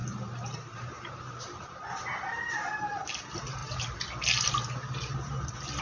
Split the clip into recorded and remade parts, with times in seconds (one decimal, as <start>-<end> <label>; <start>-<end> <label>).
0.0-2.7 remade; 2.7-5.8 recorded